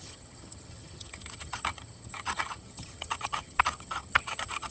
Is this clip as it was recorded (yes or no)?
no